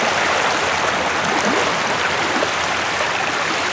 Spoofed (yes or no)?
no